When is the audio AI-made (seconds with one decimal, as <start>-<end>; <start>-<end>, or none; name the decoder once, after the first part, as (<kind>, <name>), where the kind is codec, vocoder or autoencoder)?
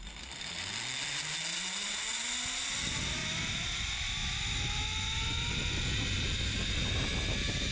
none